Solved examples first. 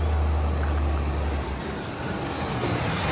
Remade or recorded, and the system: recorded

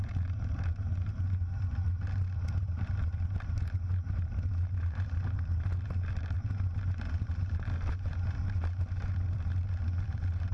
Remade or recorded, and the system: remade, vocoder, BigVGAN v2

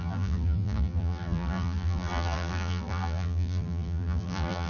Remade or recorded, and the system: remade, vocoder, BigVGAN v2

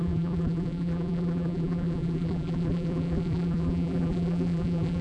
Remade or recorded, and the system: remade, vocoder, BigVGAN v2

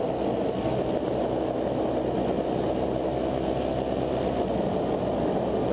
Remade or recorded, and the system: recorded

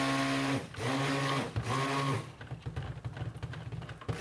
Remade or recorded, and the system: recorded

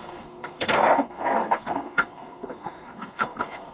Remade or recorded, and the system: remade, codec, SNAC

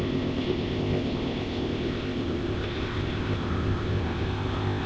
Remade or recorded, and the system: remade, codec, ZipCodec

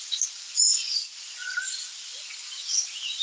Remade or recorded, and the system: recorded